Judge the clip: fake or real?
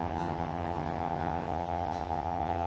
fake